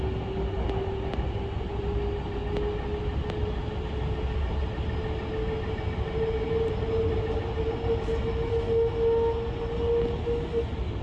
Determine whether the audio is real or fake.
real